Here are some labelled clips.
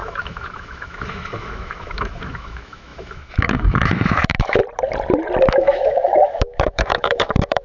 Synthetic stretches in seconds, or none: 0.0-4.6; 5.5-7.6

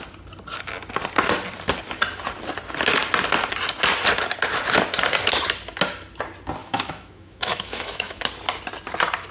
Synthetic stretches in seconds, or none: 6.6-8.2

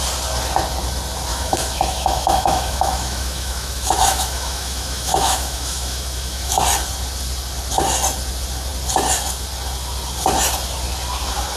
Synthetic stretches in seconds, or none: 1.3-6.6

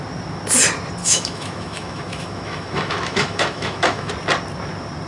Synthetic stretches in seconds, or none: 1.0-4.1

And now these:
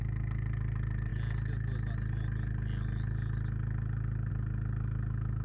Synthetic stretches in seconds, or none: none